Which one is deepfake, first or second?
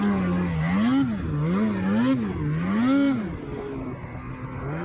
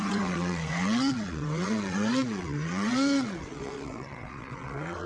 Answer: second